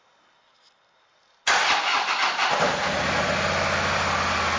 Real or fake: real